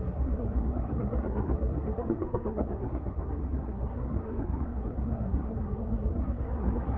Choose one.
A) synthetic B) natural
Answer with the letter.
A